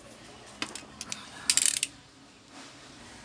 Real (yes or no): yes